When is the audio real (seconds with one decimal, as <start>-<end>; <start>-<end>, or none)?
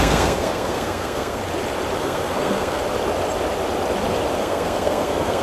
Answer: 1.4-2.0; 2.8-4.4